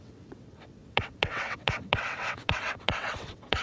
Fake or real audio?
fake